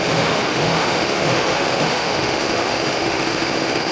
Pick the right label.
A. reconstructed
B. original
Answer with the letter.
A